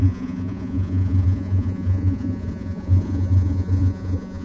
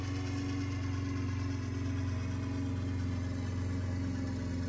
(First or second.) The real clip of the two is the second